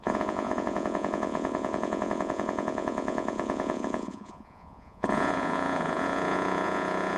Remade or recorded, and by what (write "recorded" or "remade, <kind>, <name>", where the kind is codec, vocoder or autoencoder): remade, vocoder, Vocos